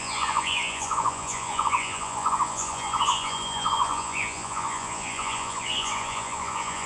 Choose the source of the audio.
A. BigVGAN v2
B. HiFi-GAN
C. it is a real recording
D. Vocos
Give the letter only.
D